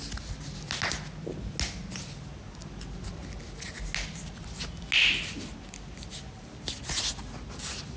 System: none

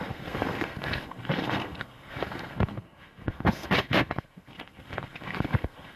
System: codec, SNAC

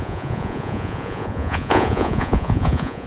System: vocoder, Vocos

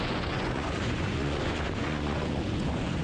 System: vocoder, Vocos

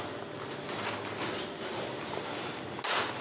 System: none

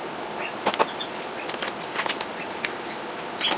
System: none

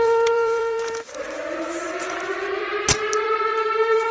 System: vocoder, BigVGAN v2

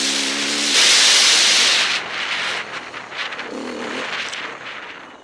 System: none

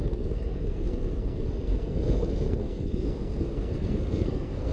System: codec, SNAC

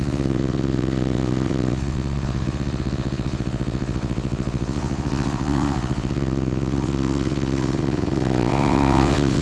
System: vocoder, WaveNeXt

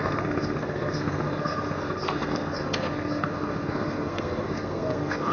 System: codec, SNAC